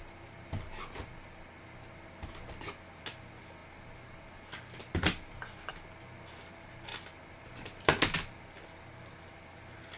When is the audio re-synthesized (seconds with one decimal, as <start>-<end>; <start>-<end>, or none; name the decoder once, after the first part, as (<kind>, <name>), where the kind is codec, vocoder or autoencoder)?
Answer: none